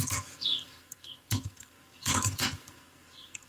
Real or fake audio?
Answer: fake